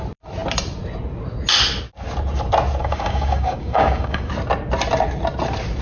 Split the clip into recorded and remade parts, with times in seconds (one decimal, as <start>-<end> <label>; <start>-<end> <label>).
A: 0.0-2.8 recorded; 2.8-4.3 remade; 4.3-5.8 recorded